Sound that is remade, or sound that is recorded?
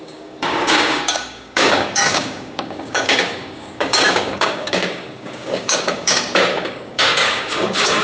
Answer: remade